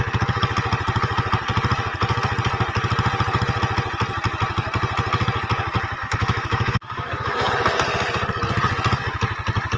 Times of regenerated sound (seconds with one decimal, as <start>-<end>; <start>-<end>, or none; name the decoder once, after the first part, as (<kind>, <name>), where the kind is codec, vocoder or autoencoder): 6.0-7.5 (autoencoder, DAC-VAE)